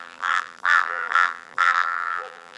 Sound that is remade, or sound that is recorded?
remade